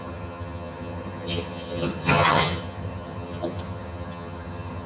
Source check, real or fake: fake